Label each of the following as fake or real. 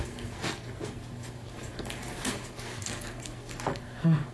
fake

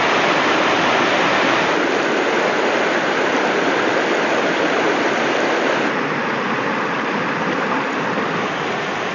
real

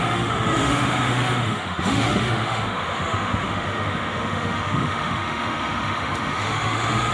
fake